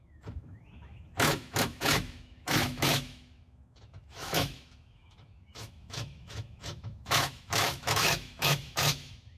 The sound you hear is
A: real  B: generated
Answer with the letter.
B